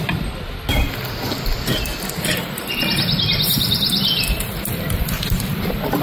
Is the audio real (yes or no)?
yes